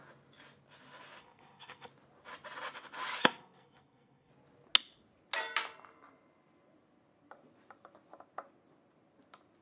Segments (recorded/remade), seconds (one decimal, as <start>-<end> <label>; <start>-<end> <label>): 0.0-1.2 recorded; 1.2-1.9 remade; 1.9-3.2 recorded; 3.2-4.3 remade; 4.3-9.6 recorded